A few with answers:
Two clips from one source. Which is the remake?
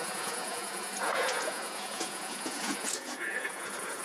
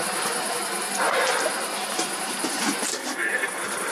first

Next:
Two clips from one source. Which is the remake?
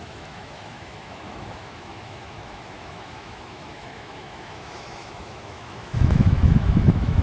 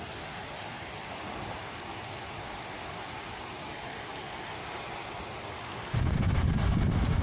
first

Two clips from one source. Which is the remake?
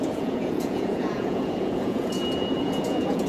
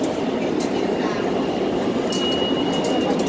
first